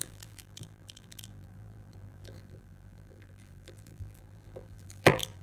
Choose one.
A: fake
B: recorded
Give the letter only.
A